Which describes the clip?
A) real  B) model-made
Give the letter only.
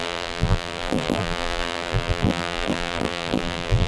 B